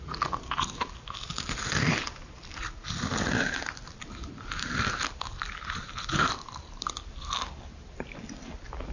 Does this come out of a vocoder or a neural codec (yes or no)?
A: no